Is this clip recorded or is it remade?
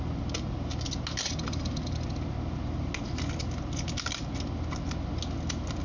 recorded